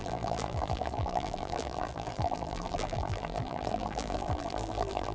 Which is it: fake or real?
fake